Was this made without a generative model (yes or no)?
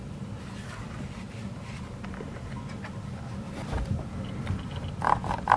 yes